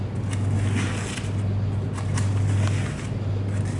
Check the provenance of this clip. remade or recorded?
recorded